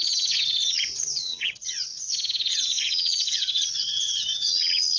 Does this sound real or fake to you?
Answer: fake